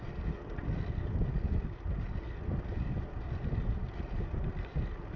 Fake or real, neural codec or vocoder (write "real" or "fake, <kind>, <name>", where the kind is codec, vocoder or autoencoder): real